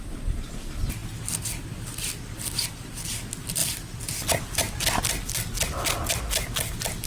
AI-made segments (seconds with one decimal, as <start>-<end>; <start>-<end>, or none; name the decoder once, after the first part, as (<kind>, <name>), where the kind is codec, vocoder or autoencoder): 3.6-5.0 (vocoder, BigVGAN v2)